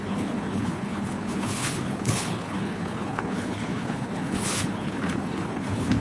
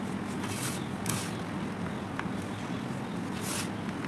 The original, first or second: second